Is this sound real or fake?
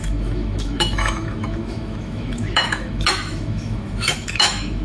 fake